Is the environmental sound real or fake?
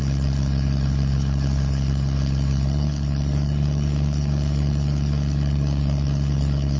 fake